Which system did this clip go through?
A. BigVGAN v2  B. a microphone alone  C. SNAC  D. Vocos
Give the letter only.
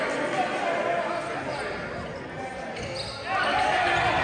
B